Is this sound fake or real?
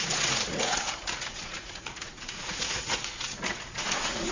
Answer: fake